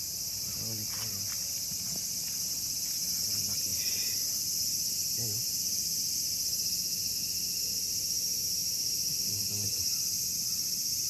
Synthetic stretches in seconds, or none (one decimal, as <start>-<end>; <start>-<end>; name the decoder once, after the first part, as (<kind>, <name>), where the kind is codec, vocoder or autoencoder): 8.6-11.1 (vocoder, BigVGAN v2)